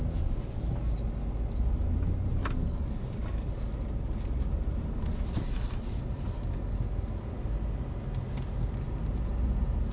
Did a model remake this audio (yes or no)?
no